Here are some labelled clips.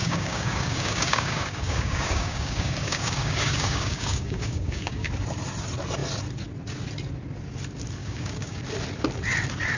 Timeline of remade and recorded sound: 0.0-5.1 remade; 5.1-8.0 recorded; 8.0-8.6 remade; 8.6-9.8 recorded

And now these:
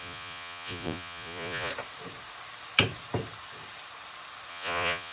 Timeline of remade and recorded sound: 0.0-1.7 remade; 1.7-4.5 recorded; 4.5-5.1 remade